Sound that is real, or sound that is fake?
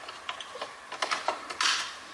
real